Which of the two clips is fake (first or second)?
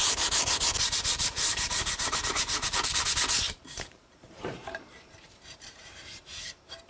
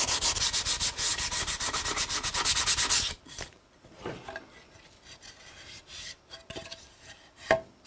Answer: first